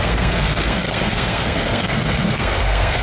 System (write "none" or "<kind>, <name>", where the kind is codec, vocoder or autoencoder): codec, SNAC